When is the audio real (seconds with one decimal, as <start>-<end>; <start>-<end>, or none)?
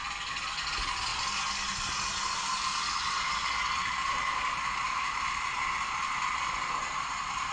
0.0-7.5